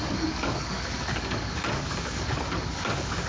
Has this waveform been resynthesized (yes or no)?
yes